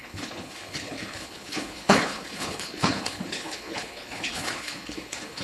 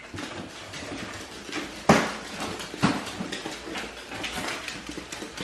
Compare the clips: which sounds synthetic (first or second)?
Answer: first